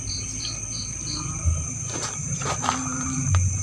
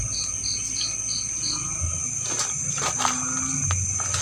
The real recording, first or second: second